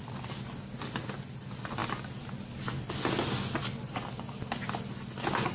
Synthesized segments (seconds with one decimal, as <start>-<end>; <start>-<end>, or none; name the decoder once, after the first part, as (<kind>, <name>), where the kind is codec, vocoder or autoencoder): none